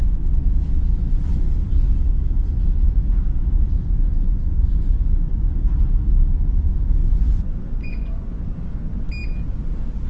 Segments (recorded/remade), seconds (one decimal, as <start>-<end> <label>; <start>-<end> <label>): 0.0-3.8 recorded; 3.8-5.6 remade; 5.6-7.0 recorded; 7.0-8.4 remade; 8.4-10.1 recorded